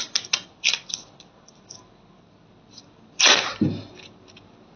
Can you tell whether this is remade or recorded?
recorded